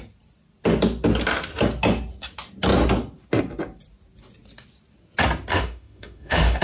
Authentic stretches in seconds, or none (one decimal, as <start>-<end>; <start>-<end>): 0.0-5.5